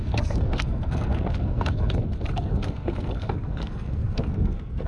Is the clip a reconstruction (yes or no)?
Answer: yes